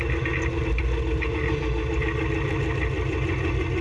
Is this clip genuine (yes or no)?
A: yes